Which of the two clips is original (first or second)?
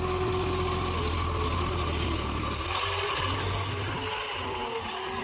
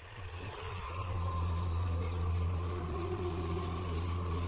first